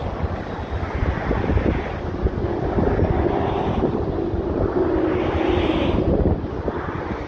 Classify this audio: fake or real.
real